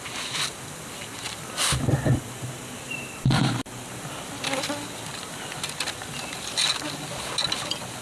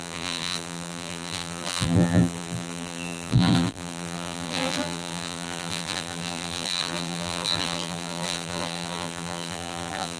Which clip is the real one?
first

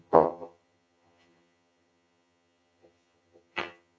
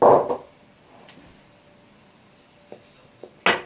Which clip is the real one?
second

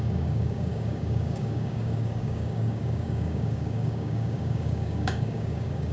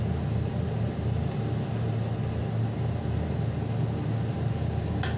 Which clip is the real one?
second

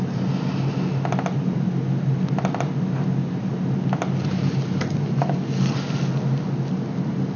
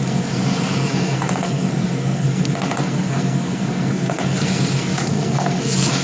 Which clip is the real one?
first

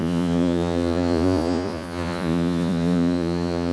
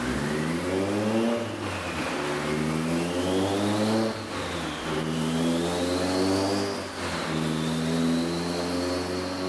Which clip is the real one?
second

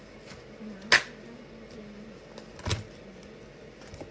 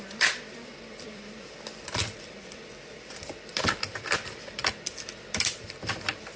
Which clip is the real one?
first